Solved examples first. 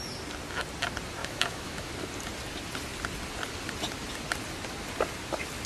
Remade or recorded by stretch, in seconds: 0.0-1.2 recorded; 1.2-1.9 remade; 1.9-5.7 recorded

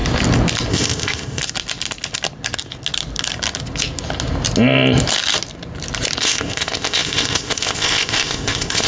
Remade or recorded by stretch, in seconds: 0.0-0.7 recorded; 0.7-1.4 remade; 1.4-6.2 recorded; 6.2-8.9 remade